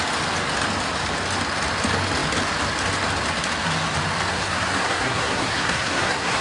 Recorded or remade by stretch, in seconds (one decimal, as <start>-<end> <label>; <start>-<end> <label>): 0.0-4.3 recorded; 4.3-6.4 remade